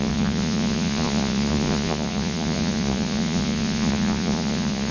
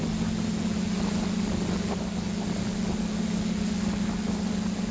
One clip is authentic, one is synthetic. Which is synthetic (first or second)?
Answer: first